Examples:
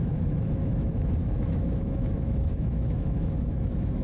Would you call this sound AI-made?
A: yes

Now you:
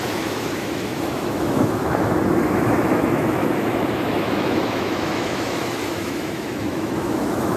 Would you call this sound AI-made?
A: yes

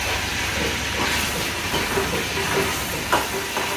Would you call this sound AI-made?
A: no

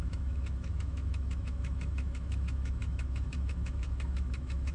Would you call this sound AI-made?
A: yes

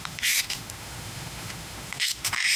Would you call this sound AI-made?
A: yes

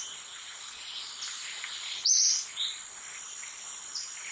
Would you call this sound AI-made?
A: no